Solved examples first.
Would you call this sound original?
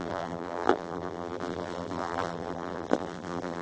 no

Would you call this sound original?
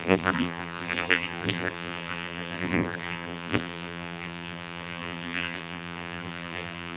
no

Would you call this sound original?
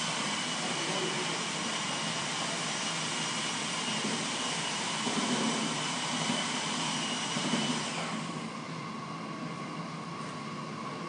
yes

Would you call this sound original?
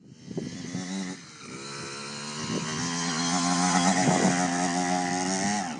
yes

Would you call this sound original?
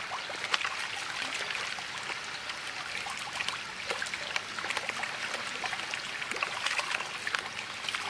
yes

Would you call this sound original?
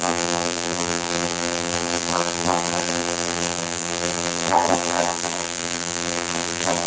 no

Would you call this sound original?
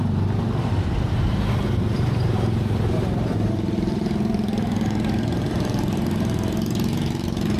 no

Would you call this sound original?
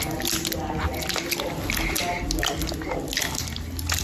yes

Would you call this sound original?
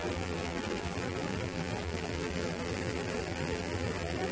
no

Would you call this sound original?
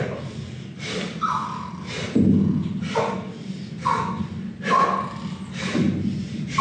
yes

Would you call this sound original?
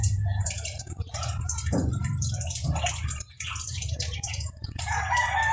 no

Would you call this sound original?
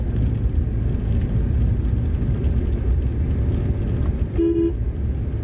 yes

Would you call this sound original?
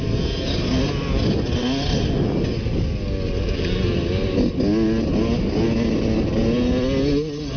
yes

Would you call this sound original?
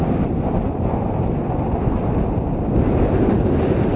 yes